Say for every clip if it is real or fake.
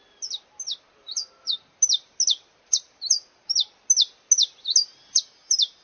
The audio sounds real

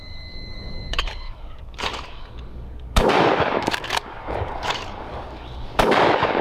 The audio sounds fake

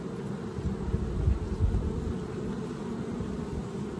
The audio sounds real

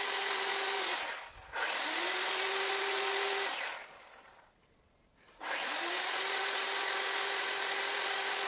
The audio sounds real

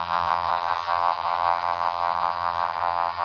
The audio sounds fake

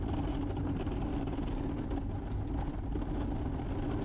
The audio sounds real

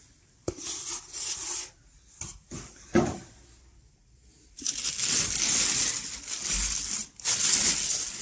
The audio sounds real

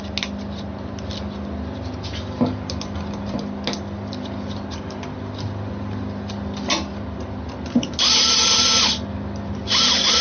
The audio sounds real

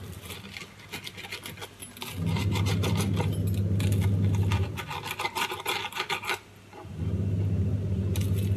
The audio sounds real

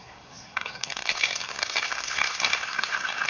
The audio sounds fake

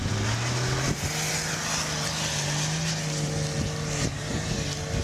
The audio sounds real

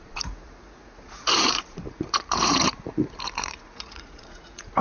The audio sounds fake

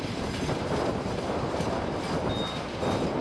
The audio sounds real